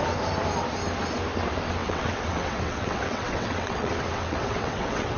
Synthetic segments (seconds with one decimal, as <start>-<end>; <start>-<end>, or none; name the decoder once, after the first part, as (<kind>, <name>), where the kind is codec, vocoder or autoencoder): 1.8-5.2 (vocoder, WaveNeXt)